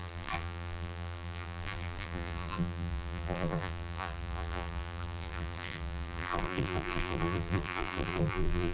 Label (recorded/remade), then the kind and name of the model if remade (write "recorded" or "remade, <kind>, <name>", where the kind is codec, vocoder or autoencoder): remade, vocoder, BigVGAN v2